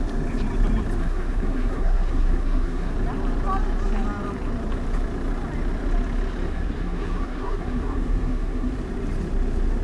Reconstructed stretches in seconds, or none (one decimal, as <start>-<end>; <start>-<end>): 1.0-2.9; 6.5-8.7